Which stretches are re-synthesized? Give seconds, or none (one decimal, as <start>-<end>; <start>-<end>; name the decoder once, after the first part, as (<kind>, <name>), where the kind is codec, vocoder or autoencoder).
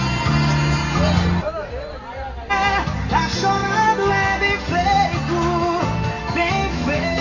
3.6-4.1 (autoencoder, DAC-VAE); 6.2-7.2